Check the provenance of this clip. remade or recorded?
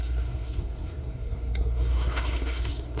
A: remade